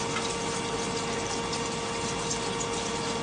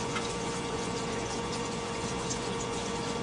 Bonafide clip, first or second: first